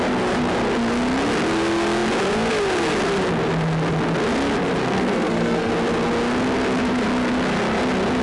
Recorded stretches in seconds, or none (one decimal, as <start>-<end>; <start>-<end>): 0.0-4.8; 5.7-8.2